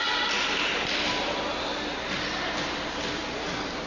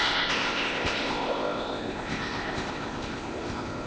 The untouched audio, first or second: first